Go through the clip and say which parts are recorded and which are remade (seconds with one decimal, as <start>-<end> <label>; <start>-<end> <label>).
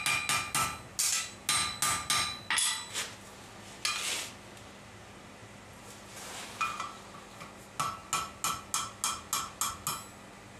0.0-5.4 recorded; 5.4-6.5 remade; 6.5-10.6 recorded